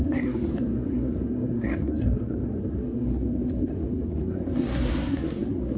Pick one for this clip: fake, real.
fake